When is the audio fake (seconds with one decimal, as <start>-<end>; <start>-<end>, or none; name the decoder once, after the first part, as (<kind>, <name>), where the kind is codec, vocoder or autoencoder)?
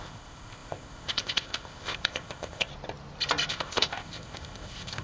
0.0-2.7 (codec, ZipCodec); 3.5-5.0